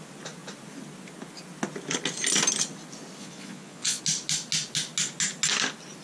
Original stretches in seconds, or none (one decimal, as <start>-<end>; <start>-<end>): 0.0-3.2; 4.0-6.0